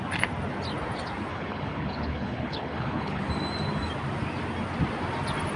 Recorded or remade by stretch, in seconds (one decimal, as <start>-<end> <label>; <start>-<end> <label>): 0.0-1.3 recorded; 1.3-3.2 remade; 3.2-5.6 recorded